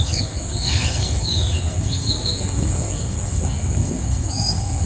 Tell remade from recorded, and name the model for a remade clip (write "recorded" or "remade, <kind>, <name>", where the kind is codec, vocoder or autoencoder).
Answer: remade, codec, SNAC